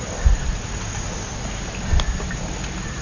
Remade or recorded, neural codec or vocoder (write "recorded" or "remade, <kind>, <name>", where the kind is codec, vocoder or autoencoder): recorded